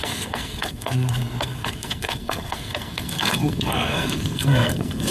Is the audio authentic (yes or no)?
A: no